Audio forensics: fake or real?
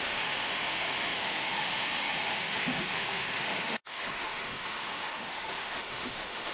fake